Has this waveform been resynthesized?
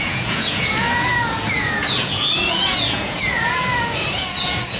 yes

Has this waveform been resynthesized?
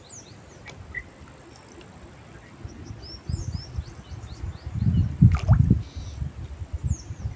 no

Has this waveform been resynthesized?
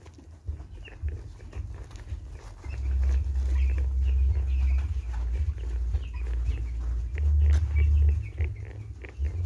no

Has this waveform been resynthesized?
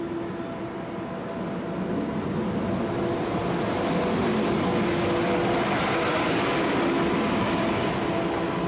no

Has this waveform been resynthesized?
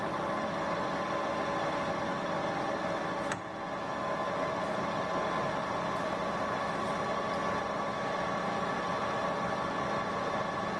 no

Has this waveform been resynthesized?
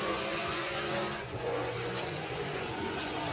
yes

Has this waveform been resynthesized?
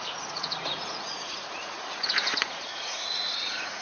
yes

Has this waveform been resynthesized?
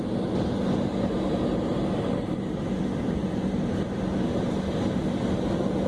no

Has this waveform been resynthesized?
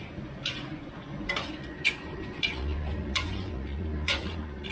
yes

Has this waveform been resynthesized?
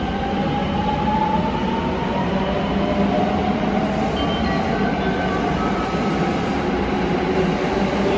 no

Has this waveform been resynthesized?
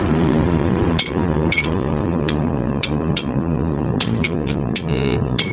yes